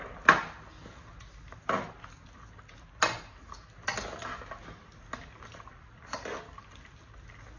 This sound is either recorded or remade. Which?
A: recorded